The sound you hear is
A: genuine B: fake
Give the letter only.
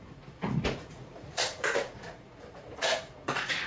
B